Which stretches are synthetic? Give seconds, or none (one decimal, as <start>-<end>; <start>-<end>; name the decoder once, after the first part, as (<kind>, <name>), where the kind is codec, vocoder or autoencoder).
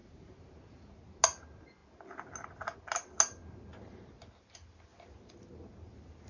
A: none